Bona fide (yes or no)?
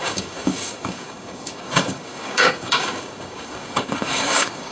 no